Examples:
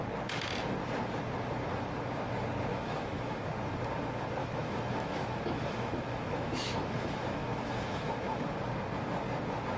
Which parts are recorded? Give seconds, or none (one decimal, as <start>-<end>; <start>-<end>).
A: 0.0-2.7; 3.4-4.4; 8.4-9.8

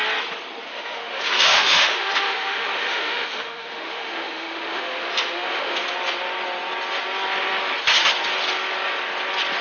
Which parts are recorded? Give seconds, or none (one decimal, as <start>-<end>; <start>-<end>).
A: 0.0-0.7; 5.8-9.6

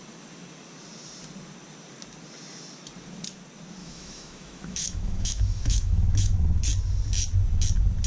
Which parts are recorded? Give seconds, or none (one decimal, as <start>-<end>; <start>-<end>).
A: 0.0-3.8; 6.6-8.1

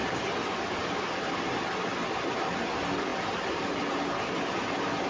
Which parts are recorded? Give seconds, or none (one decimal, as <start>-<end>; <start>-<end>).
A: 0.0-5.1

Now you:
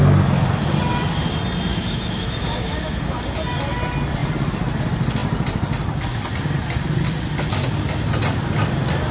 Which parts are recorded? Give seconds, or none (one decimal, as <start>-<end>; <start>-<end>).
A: 0.0-1.7; 3.2-9.1

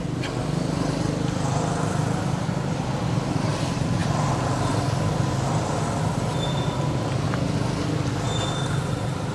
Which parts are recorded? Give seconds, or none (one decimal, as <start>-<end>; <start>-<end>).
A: 0.0-9.3